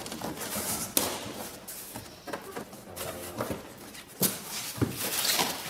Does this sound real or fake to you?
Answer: real